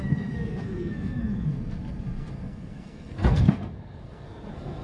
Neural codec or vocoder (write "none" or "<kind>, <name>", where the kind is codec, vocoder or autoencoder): codec, SNAC